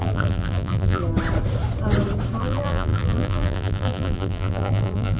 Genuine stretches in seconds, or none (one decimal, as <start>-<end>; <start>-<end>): 1.0-2.4